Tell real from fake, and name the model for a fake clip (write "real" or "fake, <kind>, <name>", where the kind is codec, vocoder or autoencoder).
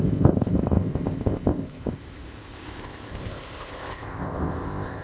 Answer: fake, codec, ZipCodec